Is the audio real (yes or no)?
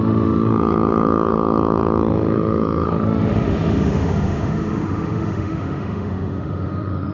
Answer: no